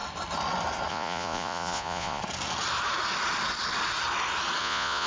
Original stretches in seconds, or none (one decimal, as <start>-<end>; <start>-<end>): 0.0-0.9; 2.2-4.6